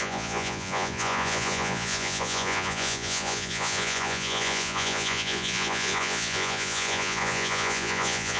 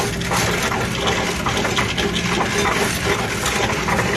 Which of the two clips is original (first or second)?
second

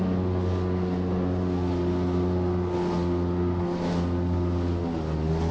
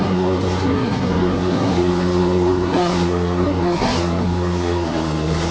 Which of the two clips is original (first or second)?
first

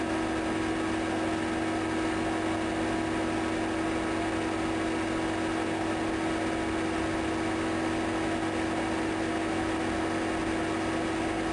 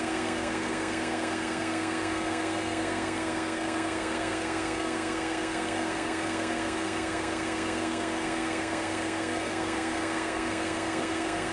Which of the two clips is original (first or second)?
first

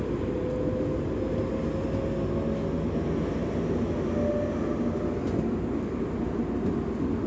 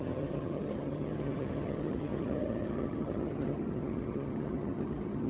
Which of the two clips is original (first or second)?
first